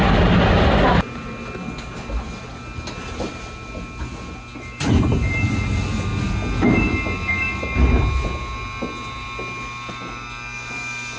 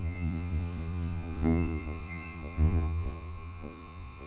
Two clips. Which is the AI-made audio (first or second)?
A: second